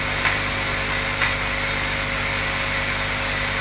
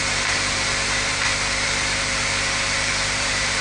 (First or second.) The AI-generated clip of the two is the second